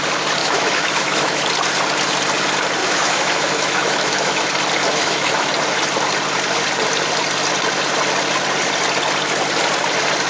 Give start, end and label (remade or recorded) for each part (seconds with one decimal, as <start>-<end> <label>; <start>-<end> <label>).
0.0-0.4 recorded; 0.4-1.4 remade; 1.4-2.8 recorded; 2.8-4.4 remade; 4.4-4.9 recorded; 4.9-5.5 remade; 5.5-10.3 recorded